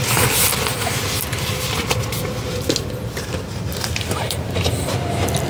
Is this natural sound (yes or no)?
yes